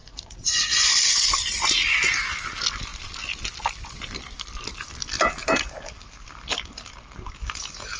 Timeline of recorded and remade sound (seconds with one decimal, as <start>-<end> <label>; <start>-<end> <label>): 0.0-0.9 remade; 0.9-8.0 recorded